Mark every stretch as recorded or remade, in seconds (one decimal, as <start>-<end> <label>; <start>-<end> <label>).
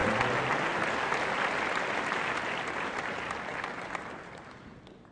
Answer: 0.0-5.1 recorded